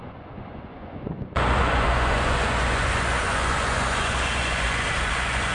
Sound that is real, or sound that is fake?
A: fake